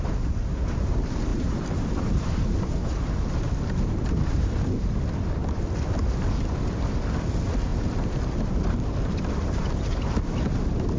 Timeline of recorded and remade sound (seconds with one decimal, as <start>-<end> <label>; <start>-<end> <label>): 0.0-1.3 recorded; 1.3-5.0 remade; 5.0-7.7 recorded; 7.7-10.0 remade; 10.0-11.0 recorded